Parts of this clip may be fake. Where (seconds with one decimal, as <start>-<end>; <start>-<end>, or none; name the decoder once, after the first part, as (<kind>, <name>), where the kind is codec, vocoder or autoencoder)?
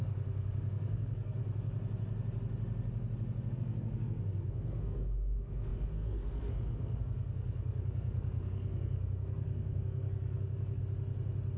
0.0-1.4 (codec, SNAC); 3.5-10.8